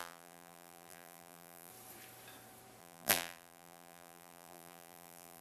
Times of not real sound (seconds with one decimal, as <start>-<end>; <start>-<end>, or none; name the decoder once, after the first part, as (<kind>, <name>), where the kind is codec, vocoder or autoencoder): 0.0-1.7 (vocoder, BigVGAN v2); 2.8-5.4